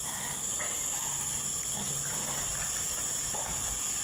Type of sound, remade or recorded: recorded